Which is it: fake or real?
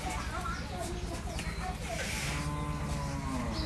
real